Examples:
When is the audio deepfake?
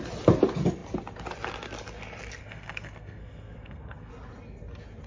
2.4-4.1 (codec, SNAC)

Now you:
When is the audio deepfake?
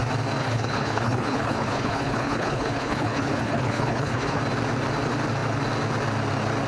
0.4-4.4 (codec, HILCodec)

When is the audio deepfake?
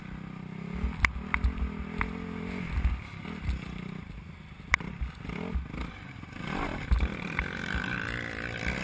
none